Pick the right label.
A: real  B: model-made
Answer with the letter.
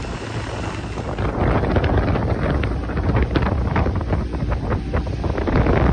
A